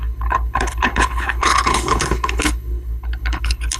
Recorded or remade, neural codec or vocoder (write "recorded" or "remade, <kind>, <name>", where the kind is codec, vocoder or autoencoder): remade, codec, HILCodec